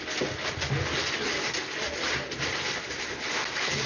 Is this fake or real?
real